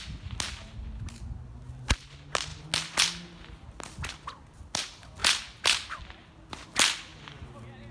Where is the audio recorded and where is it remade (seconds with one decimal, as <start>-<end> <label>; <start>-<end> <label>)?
0.0-7.9 recorded